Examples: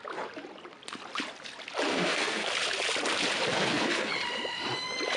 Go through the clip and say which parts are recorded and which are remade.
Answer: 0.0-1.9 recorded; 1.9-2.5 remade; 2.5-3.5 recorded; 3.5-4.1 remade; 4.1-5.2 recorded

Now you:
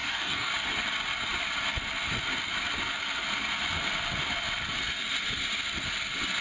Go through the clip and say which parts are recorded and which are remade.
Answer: 0.0-0.5 remade; 0.5-6.4 recorded

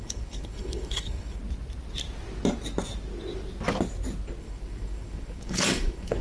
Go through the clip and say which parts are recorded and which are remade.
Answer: 0.0-1.4 remade; 1.4-4.4 recorded; 4.4-6.2 remade

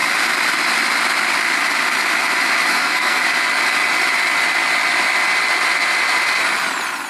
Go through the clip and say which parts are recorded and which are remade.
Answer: 0.0-2.7 recorded; 2.7-3.2 remade; 3.2-7.1 recorded